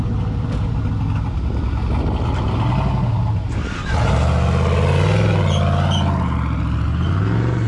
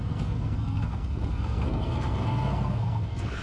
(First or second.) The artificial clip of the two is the second